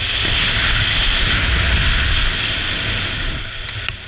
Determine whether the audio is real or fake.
real